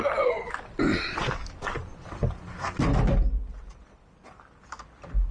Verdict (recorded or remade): recorded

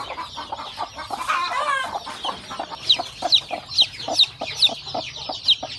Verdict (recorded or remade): recorded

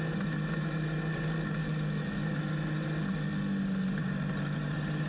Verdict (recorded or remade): recorded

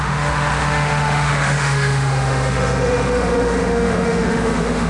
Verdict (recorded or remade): remade